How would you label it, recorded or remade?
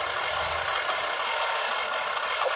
recorded